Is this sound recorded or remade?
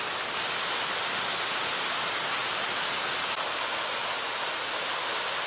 recorded